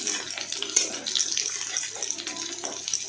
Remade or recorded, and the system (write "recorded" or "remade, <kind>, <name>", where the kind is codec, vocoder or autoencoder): recorded